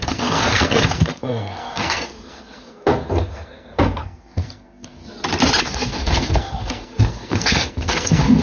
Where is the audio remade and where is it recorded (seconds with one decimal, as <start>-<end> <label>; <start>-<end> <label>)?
0.0-5.0 remade; 5.0-5.6 recorded; 5.6-8.4 remade